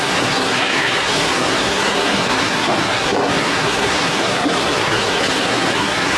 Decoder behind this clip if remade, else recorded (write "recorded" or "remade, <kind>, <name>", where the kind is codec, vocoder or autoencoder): remade, codec, SNAC